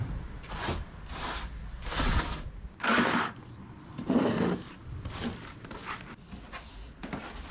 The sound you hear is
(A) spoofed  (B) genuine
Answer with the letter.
B